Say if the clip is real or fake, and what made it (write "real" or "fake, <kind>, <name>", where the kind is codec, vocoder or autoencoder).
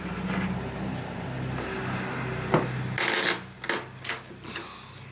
real